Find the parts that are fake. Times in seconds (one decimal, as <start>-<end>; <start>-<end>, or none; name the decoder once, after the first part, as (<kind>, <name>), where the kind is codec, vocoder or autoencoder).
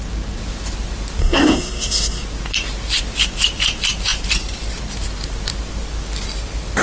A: 1.2-2.2 (codec, SNAC)